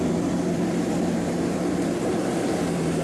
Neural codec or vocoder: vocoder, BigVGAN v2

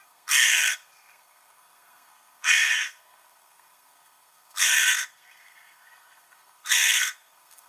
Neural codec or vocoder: codec, SNAC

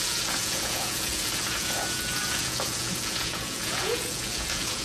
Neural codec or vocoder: vocoder, Vocos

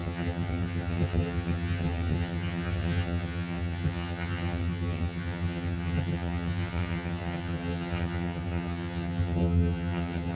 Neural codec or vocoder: vocoder, HiFi-GAN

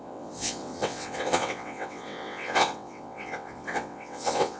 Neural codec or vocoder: vocoder, WaveNeXt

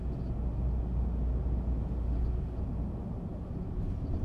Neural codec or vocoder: none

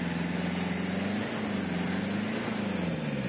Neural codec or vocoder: none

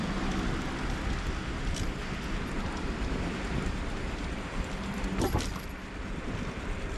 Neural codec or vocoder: vocoder, BigVGAN v2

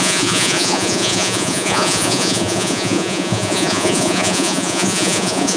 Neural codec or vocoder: vocoder, Vocos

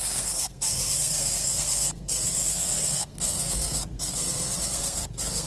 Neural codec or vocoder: codec, SNAC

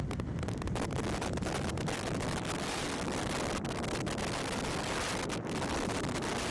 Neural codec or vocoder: none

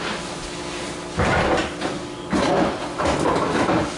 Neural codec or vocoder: none